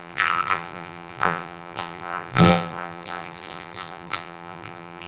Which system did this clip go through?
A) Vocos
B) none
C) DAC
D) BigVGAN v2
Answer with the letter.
D